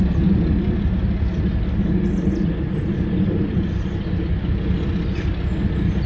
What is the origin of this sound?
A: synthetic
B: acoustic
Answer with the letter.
B